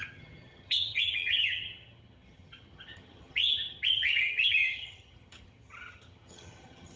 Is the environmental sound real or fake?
fake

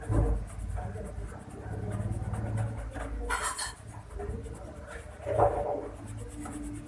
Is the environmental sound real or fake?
real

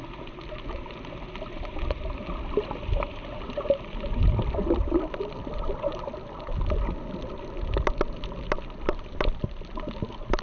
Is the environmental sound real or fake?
real